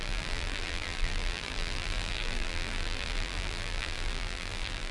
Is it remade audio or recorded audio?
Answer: remade